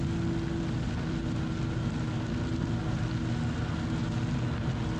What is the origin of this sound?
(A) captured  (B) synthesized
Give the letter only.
A